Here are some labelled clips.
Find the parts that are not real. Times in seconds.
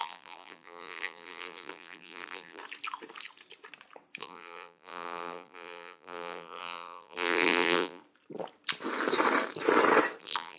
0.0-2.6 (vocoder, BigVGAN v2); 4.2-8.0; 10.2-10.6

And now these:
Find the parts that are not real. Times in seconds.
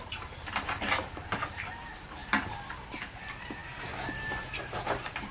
2.2-3.2 (vocoder, BigVGAN v2)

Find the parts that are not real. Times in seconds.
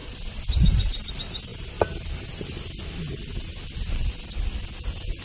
0.0-1.1 (vocoder, BigVGAN v2)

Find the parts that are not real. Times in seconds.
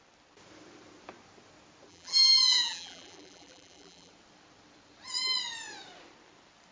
1.9-4.1 (vocoder, BigVGAN v2)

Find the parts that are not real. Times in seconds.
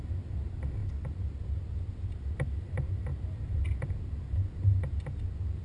none